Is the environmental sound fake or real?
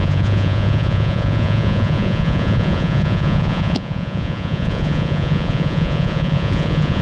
fake